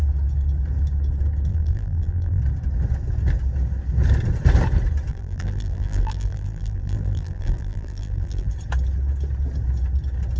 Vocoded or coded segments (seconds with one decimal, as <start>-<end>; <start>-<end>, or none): 1.5-2.4; 5.1-8.5